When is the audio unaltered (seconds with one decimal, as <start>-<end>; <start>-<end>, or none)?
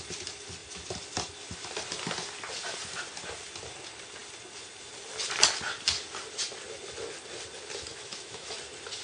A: 0.0-7.9; 8.5-9.0